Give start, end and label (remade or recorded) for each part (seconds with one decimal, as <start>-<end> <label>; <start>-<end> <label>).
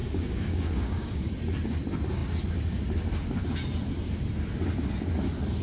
0.0-1.3 remade; 1.3-5.6 recorded